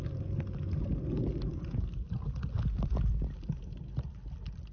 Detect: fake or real real